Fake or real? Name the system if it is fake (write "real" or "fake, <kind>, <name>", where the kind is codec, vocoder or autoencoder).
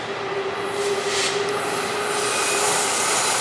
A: real